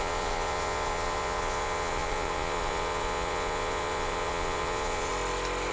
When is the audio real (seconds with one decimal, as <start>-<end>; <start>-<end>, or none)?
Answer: 5.1-5.7

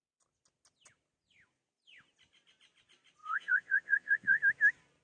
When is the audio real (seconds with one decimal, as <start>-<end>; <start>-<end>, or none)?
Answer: 0.0-3.2; 4.4-5.0

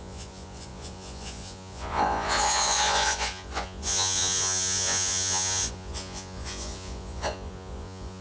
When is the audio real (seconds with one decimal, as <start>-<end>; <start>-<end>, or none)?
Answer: none

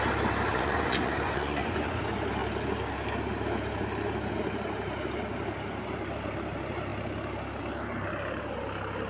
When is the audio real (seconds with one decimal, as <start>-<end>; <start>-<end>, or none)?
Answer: 0.0-0.5; 2.0-9.1

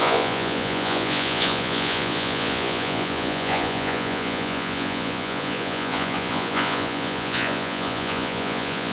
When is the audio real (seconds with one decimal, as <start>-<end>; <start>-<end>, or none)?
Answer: none

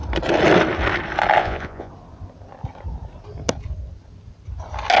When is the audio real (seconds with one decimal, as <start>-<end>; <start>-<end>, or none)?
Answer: 0.0-1.4; 1.9-5.0

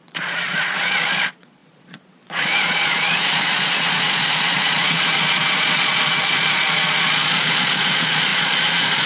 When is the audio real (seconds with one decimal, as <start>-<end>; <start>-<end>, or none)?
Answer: none